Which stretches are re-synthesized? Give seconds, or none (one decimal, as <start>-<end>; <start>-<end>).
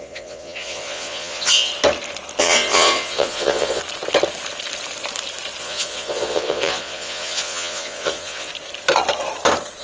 0.0-1.7; 2.4-3.8; 5.6-8.5